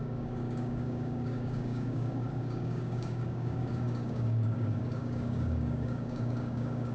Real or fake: fake